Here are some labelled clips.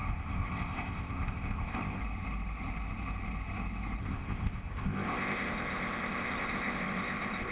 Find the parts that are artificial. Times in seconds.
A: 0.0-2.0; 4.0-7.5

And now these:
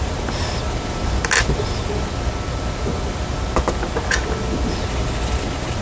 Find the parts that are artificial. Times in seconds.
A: none

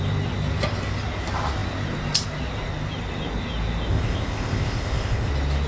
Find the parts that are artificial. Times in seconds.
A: 3.9-5.3

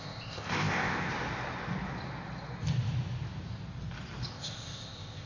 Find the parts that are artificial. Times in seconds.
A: 0.0-1.1; 4.3-5.3

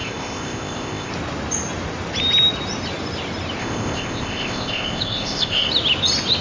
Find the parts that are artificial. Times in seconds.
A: 0.0-1.1; 3.6-5.7

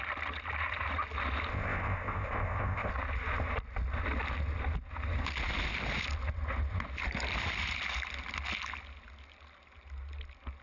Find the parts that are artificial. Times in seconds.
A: 1.5-2.9

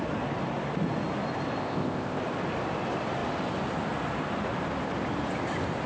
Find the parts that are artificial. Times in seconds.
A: 1.6-2.2

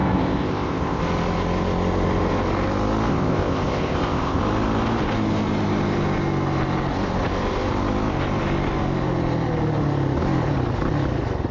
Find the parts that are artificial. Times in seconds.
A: 0.0-1.0; 3.1-4.4